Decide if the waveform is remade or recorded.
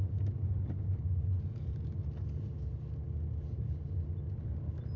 recorded